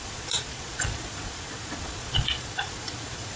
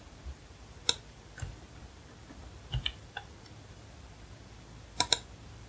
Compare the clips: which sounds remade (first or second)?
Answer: first